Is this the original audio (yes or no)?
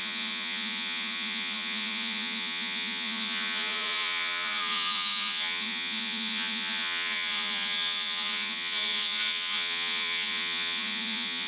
no